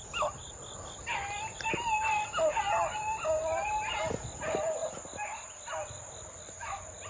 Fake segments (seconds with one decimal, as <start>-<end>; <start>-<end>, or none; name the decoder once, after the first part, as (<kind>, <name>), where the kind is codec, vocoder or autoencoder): none